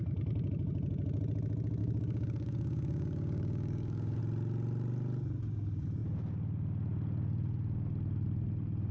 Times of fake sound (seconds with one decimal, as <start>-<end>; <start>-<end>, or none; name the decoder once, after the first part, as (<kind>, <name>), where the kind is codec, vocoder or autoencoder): 1.8-4.2 (codec, DAC)